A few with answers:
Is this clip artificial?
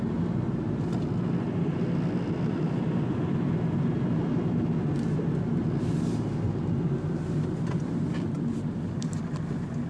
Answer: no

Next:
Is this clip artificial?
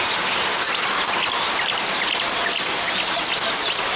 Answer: no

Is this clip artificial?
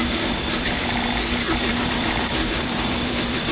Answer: yes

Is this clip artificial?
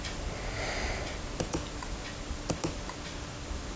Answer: no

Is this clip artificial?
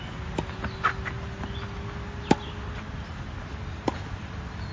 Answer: no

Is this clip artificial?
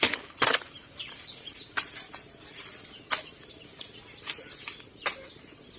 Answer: no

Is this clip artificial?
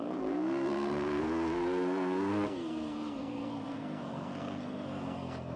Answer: yes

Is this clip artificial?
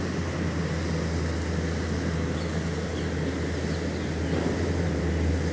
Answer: no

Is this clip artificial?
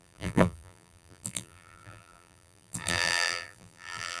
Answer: yes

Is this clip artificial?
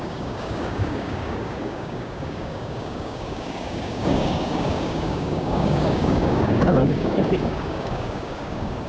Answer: yes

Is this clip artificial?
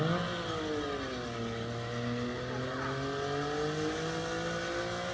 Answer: no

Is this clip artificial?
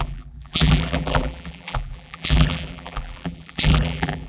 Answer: yes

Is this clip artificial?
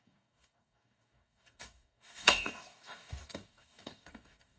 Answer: yes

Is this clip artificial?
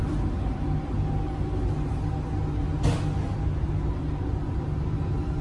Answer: no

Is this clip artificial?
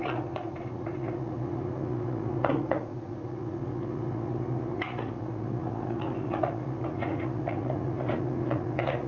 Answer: yes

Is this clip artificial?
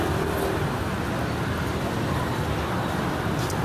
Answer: no